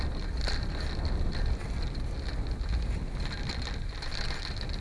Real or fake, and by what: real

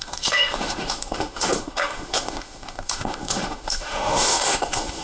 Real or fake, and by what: fake, autoencoder, DAC-VAE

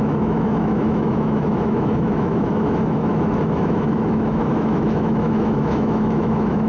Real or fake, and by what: fake, autoencoder, DAC-VAE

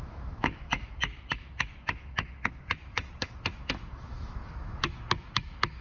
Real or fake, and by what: fake, autoencoder, DAC-VAE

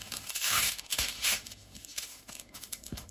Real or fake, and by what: fake, autoencoder, DAC-VAE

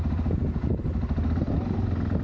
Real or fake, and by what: real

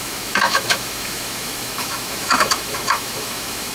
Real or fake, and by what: fake, autoencoder, DAC-VAE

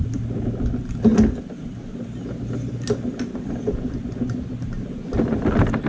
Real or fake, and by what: real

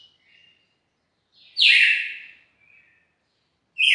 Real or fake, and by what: real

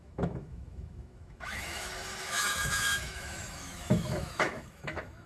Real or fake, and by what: fake, autoencoder, DAC-VAE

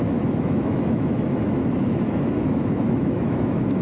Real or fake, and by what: fake, autoencoder, DAC-VAE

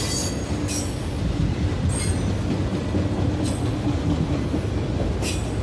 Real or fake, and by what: real